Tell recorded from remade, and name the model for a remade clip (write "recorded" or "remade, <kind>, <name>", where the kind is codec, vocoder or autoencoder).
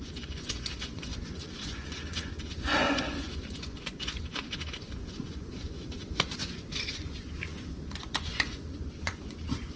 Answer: remade, vocoder, Vocos